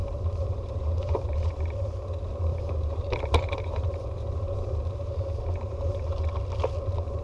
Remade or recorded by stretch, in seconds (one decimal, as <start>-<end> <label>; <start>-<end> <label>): 0.0-1.5 remade; 1.5-2.5 recorded; 2.5-5.1 remade; 5.1-7.2 recorded